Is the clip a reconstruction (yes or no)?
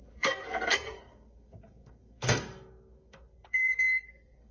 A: yes